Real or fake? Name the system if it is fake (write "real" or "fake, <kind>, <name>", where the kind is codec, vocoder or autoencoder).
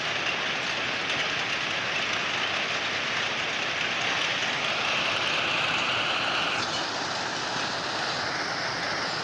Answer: real